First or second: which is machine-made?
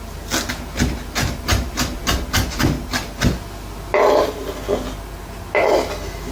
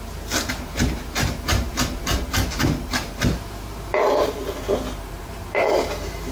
second